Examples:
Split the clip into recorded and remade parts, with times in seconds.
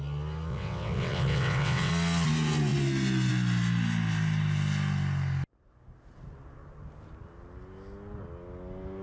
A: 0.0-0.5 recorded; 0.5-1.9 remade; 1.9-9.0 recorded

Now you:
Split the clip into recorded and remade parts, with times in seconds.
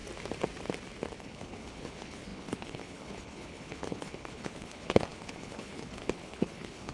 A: 0.0-1.2 recorded; 1.2-6.9 remade